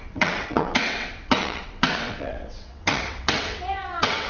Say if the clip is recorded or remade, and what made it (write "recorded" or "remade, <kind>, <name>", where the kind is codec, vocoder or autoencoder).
remade, vocoder, WaveNeXt